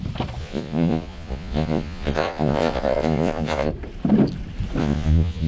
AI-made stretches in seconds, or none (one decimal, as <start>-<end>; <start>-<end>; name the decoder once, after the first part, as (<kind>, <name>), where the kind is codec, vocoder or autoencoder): 0.4-3.7 (vocoder, Vocos); 4.8-5.5

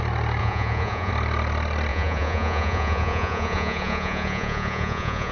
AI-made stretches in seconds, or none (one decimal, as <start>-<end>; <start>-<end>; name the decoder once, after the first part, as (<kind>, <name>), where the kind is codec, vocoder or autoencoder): 0.4-1.1 (vocoder, Vocos); 1.9-5.3